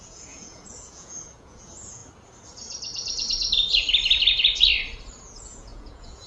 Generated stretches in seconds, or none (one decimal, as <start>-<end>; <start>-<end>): 0.0-2.0; 5.2-6.3